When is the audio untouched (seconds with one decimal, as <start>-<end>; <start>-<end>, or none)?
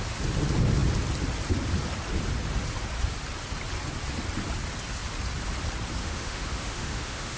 0.0-6.0